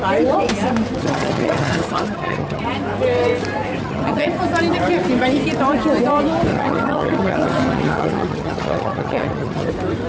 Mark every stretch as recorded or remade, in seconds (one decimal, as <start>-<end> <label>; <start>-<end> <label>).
0.0-1.0 recorded; 1.0-2.6 remade; 2.6-3.8 recorded; 3.8-4.4 remade; 4.4-6.5 recorded; 6.5-9.7 remade; 9.7-10.1 recorded